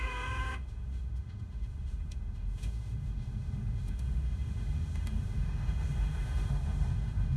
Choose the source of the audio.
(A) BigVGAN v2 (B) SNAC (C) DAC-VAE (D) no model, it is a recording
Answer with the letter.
C